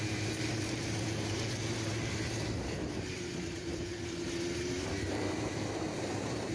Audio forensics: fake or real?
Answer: fake